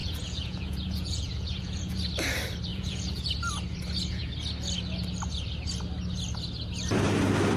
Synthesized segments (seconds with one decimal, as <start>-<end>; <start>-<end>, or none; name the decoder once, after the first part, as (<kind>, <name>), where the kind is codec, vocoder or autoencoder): 0.0-2.0 (vocoder, Vocos); 2.7-3.3